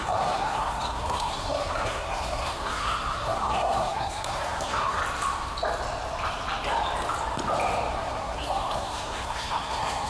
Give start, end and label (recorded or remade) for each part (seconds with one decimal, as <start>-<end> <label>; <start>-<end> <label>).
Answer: 0.0-5.0 remade; 5.0-7.9 recorded; 7.9-10.1 remade

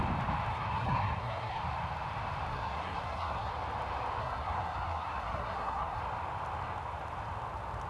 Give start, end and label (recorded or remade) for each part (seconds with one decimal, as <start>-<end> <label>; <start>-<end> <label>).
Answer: 0.0-0.5 recorded; 0.5-1.6 remade; 1.6-2.5 recorded; 2.5-3.5 remade; 3.5-4.2 recorded; 4.2-6.0 remade; 6.0-7.9 recorded

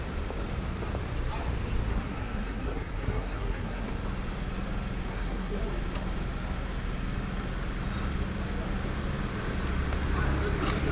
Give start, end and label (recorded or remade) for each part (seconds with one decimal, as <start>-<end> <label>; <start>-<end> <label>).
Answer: 0.0-1.9 recorded; 1.9-3.9 remade; 3.9-5.1 recorded; 5.1-5.6 remade; 5.6-10.9 recorded

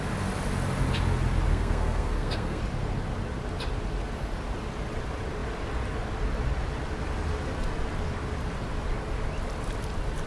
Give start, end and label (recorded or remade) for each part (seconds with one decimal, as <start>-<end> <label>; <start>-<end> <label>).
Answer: 0.0-1.5 recorded; 1.5-2.6 remade; 2.6-10.3 recorded

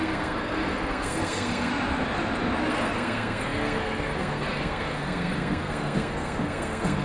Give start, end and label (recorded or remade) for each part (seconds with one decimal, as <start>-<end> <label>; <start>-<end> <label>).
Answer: 0.0-1.7 remade; 1.7-2.7 recorded; 2.7-7.0 remade